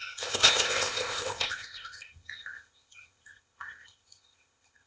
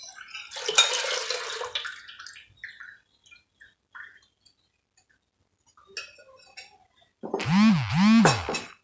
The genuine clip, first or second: second